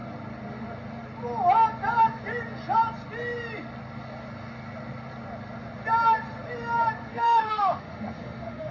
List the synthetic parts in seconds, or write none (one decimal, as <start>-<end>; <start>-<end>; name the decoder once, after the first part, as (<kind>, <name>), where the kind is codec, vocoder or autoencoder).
7.1-8.7 (autoencoder, DAC-VAE)